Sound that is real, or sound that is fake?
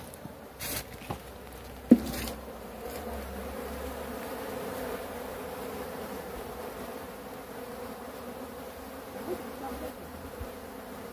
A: fake